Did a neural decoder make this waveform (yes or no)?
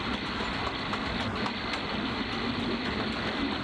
no